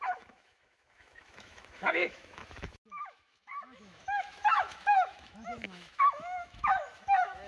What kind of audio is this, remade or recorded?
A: remade